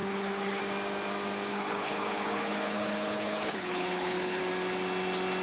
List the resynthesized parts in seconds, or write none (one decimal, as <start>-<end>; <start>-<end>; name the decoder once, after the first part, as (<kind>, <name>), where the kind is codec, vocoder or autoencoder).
0.0-0.6 (codec, HILCodec); 1.5-4.4